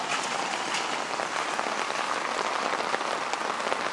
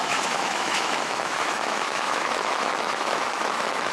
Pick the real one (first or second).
first